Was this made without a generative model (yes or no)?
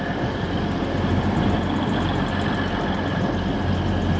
yes